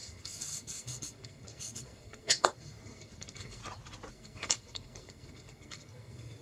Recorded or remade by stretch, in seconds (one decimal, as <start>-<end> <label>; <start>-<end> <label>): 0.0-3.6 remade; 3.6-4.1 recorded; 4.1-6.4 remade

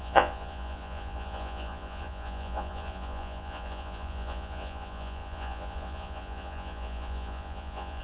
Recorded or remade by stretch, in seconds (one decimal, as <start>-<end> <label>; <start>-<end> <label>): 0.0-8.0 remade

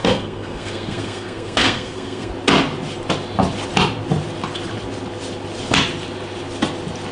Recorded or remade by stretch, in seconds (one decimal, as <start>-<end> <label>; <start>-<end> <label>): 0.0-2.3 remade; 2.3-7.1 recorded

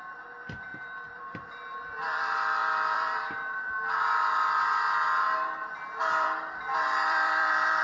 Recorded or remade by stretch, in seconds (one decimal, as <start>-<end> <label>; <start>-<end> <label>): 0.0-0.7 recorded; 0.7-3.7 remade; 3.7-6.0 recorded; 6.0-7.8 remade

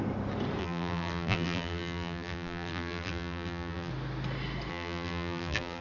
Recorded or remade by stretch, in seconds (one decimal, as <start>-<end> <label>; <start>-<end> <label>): 0.0-0.6 recorded; 0.6-3.9 remade; 3.9-4.7 recorded; 4.7-5.8 remade

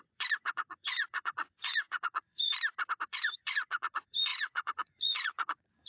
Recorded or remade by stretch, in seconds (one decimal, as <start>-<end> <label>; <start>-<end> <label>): 0.0-2.5 remade; 2.5-3.1 recorded; 3.1-5.9 remade

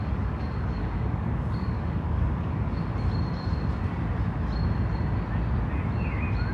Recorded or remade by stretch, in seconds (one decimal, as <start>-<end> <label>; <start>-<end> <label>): 0.0-2.9 remade; 2.9-6.5 recorded

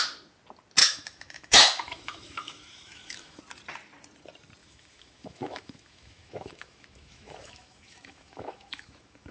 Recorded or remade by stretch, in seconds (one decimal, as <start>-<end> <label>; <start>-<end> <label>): 0.0-0.8 recorded; 0.8-3.4 remade; 3.4-4.6 recorded; 4.6-9.3 remade